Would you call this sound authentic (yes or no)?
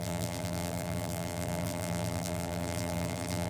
no